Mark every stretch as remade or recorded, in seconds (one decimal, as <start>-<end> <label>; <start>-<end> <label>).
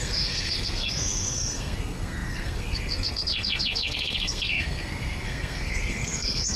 0.0-6.6 remade